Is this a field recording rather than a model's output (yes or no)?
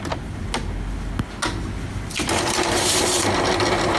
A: yes